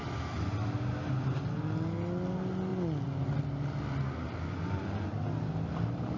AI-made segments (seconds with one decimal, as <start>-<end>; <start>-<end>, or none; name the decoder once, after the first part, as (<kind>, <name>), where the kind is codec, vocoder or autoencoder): none